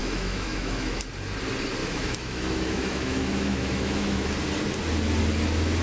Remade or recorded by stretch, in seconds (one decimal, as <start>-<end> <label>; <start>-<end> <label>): 0.0-1.0 remade; 1.0-1.8 recorded; 1.8-4.3 remade; 4.3-5.8 recorded